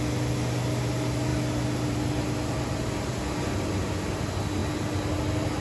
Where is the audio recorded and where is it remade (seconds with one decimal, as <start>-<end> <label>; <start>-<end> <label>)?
0.0-5.6 recorded

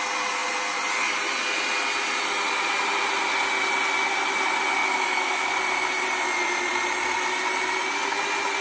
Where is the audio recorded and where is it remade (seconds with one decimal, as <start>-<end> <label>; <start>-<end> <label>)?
0.0-4.8 recorded; 4.8-5.5 remade; 5.5-8.6 recorded

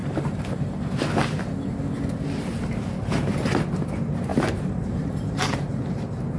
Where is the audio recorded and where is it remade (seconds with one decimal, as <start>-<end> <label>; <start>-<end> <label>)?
0.0-0.9 remade; 0.9-4.3 recorded; 4.3-5.8 remade; 5.8-6.4 recorded

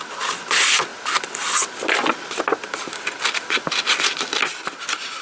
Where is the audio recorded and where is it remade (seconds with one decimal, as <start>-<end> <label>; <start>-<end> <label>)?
0.0-5.2 recorded

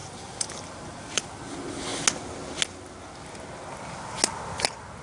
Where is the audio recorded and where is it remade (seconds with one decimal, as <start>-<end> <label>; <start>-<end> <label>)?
0.0-1.2 remade; 1.2-5.0 recorded